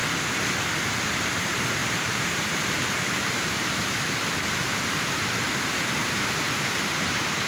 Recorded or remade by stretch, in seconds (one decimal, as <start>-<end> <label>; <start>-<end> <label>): 0.0-1.8 recorded; 1.8-4.5 remade; 4.5-6.0 recorded; 6.0-7.5 remade